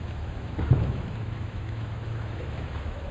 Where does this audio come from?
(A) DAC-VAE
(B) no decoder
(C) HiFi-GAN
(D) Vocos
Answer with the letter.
A